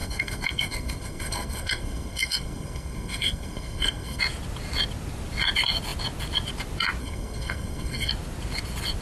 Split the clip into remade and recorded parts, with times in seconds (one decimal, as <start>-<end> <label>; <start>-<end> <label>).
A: 0.0-4.2 remade; 4.2-7.0 recorded; 7.0-8.1 remade; 8.1-9.0 recorded